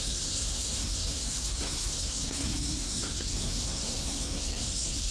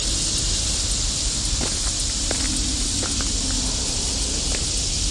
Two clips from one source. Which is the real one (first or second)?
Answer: second